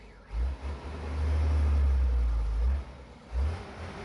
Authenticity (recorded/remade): recorded